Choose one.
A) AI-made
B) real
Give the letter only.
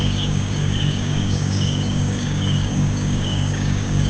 A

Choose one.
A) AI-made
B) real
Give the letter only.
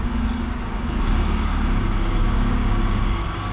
A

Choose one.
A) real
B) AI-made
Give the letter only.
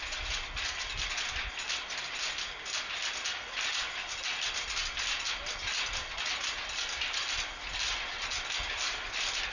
A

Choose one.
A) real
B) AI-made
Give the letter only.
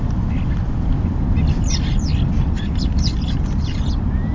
A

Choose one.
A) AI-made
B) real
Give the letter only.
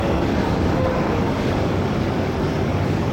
A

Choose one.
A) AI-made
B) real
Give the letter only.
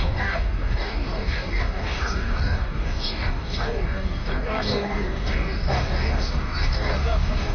A